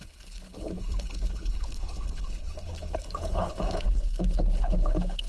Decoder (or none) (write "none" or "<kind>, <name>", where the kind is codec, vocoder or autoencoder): codec, HILCodec